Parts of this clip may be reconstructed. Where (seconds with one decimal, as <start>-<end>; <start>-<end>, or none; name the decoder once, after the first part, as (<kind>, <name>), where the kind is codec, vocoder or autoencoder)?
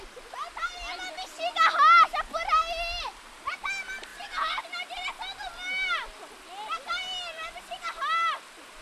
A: none